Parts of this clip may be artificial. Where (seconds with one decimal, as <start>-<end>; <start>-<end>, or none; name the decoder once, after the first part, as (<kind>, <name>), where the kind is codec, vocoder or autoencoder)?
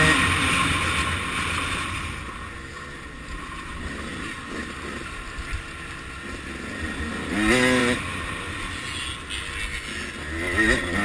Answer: 7.8-8.6 (vocoder, BigVGAN v2)